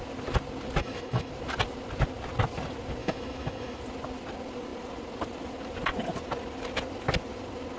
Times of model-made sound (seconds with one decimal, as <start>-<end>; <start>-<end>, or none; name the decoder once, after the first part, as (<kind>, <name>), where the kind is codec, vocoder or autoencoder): 0.8-1.3 (autoencoder, DAC-VAE); 3.0-3.8